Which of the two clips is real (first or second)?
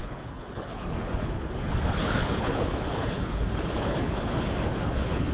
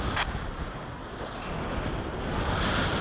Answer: second